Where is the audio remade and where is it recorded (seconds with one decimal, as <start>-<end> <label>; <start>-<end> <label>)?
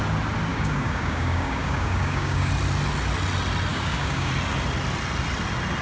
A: 0.0-0.5 recorded; 0.5-2.5 remade; 2.5-3.7 recorded; 3.7-4.3 remade; 4.3-5.8 recorded